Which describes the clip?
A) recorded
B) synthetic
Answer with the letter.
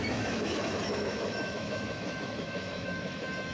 B